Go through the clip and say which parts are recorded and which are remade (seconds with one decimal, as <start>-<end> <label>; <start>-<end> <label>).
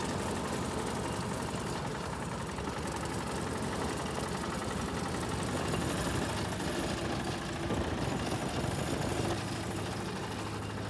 0.0-1.9 recorded; 1.9-2.4 remade; 2.4-9.1 recorded; 9.1-9.9 remade; 9.9-10.9 recorded